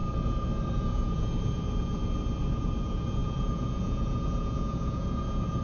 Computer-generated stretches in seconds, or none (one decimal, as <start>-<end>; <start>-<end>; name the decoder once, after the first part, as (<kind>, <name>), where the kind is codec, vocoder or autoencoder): 0.8-2.0 (vocoder, Vocos); 2.8-5.6